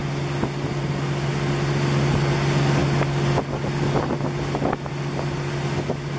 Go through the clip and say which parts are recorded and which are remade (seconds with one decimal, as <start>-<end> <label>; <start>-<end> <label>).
0.0-6.2 recorded